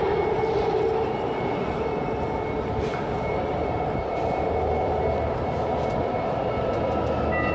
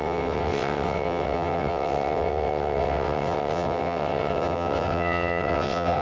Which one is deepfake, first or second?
second